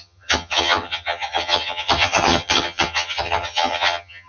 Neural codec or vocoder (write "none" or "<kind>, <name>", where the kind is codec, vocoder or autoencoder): vocoder, HiFi-GAN